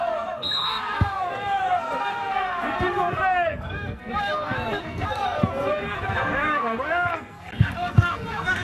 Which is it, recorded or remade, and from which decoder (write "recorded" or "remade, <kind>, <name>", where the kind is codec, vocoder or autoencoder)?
remade, codec, SNAC